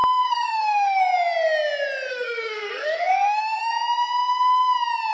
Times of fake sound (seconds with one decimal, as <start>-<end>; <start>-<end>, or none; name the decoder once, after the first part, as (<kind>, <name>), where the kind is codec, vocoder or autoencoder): 0.0-1.0 (codec, SNAC); 2.1-3.7